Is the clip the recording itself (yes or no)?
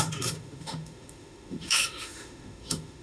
no